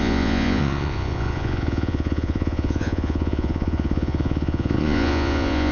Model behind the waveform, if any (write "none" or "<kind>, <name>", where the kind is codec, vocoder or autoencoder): vocoder, Vocos